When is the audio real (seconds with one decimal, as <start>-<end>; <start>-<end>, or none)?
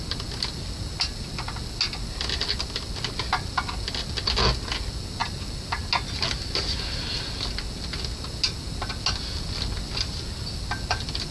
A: 0.0-11.3